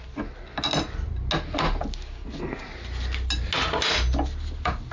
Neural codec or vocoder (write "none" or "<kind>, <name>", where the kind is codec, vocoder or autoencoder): none